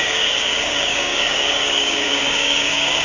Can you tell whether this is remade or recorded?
remade